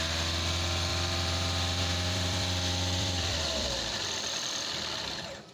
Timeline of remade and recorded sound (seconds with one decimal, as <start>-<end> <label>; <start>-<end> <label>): 0.0-0.9 recorded; 0.9-4.2 remade; 4.2-5.5 recorded